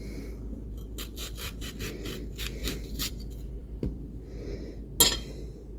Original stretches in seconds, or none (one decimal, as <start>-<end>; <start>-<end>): 0.0-1.1; 2.0-3.6; 4.5-5.8